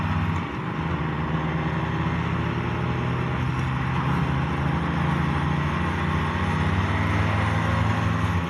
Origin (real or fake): real